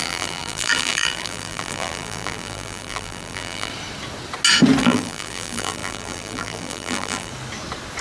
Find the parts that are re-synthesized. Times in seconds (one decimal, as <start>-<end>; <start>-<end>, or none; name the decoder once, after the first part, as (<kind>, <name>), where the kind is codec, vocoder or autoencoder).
0.0-3.7 (vocoder, BigVGAN v2); 4.8-7.3